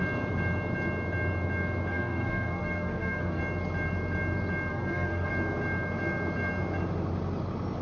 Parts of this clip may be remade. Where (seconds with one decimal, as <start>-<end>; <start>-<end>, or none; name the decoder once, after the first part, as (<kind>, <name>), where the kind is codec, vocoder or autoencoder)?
1.9-3.4 (codec, SNAC); 4.7-5.3